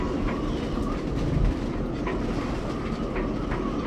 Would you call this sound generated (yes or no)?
no